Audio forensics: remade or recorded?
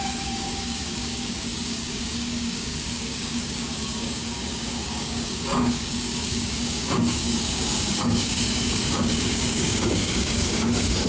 remade